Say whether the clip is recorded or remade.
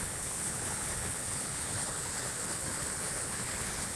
remade